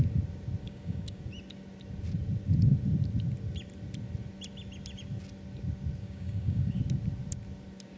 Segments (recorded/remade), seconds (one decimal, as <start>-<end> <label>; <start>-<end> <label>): 0.0-0.6 recorded; 0.6-1.2 remade; 1.2-6.0 recorded; 6.0-6.8 remade; 6.8-8.0 recorded